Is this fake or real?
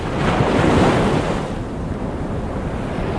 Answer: real